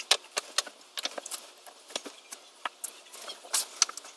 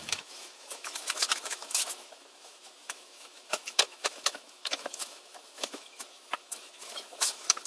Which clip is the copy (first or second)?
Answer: second